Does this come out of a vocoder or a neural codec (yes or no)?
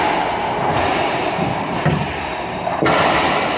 no